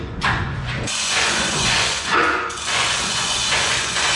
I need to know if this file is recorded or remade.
remade